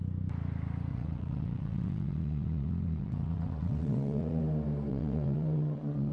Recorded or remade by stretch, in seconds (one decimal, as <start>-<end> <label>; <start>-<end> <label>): 0.0-0.9 recorded; 0.9-4.4 remade; 4.4-4.9 recorded; 4.9-6.1 remade